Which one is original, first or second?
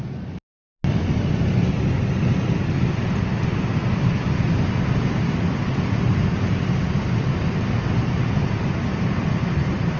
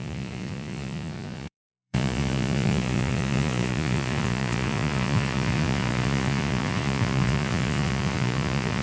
first